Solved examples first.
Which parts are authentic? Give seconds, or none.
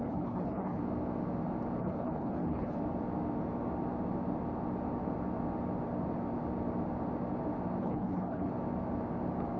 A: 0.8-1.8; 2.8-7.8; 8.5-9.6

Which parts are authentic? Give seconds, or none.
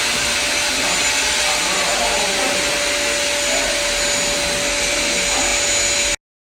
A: 0.0-6.6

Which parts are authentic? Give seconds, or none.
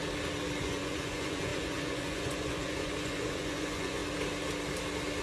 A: 0.0-0.6; 4.0-5.2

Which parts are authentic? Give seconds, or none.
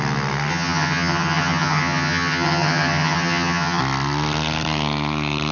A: 0.0-0.5; 3.8-5.5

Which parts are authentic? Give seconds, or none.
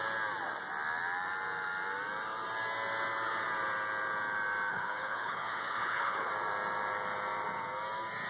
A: 0.0-4.7; 6.3-8.3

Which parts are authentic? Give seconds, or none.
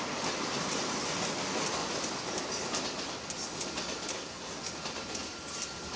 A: 0.0-4.1; 4.6-6.0